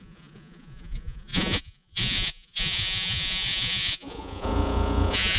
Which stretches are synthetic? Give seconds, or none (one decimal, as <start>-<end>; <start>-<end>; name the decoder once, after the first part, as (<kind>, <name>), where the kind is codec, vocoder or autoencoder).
0.0-5.4 (vocoder, Vocos)